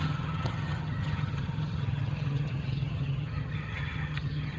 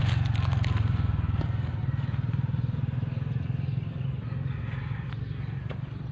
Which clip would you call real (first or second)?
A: second